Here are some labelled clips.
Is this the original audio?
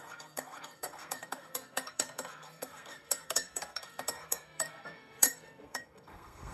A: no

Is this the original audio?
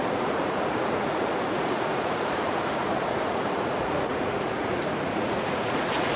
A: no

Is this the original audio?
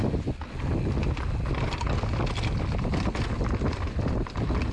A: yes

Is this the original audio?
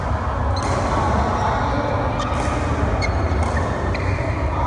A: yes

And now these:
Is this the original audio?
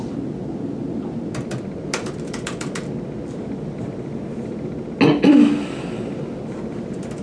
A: yes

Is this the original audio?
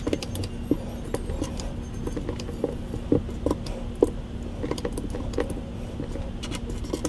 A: yes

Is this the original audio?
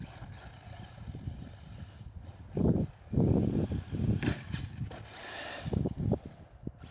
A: yes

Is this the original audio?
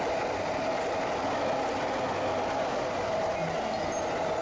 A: yes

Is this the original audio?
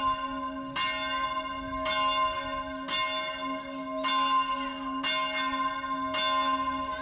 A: yes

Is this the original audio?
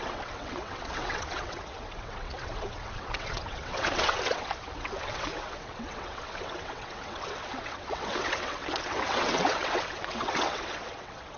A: no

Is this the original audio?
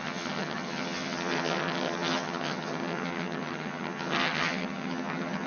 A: no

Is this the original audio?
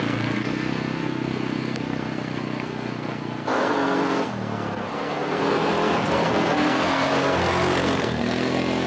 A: no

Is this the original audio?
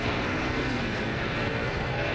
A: no